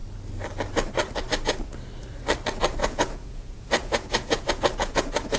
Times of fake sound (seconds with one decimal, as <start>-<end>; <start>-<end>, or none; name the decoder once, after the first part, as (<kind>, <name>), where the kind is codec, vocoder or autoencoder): 2.8-5.4 (vocoder, Vocos)